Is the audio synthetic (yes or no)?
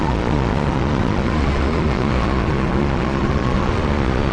yes